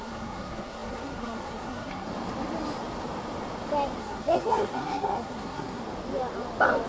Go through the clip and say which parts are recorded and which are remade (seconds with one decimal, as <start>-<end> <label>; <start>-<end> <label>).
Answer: 0.0-2.1 remade; 2.1-4.0 recorded; 4.0-5.8 remade; 5.8-6.9 recorded